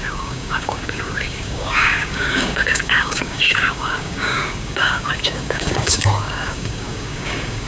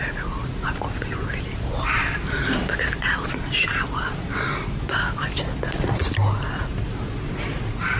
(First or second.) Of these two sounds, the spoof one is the first